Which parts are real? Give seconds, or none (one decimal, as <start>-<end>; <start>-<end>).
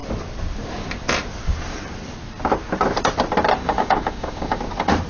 0.0-3.6; 4.6-5.1